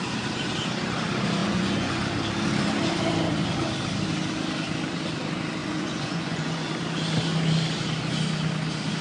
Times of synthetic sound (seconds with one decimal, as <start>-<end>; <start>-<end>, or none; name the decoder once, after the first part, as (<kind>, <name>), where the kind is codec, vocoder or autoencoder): 1.4-2.0 (vocoder, Vocos); 5.6-6.7